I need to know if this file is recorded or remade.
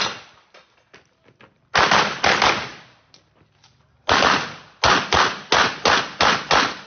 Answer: recorded